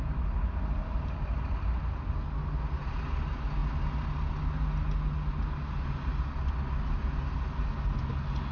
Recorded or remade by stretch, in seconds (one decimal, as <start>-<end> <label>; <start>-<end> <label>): 0.0-8.5 recorded